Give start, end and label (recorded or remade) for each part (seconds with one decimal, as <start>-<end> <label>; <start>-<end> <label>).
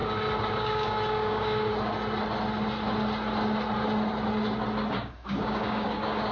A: 0.0-0.5 recorded; 0.5-1.7 remade; 1.7-4.9 recorded; 4.9-6.3 remade